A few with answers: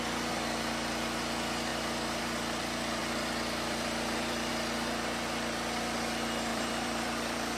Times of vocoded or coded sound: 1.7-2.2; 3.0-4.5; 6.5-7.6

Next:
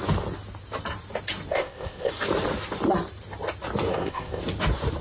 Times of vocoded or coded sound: 1.5-2.1; 3.9-4.4

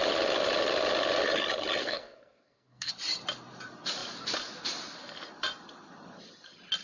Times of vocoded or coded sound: 1.8-2.9